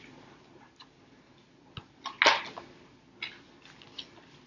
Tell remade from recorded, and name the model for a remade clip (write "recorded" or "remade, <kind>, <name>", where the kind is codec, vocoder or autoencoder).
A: recorded